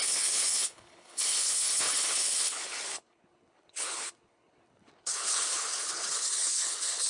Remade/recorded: remade